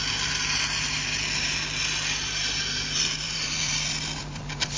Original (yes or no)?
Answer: yes